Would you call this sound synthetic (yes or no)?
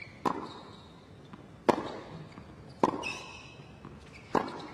no